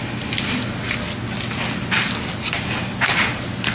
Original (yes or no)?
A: yes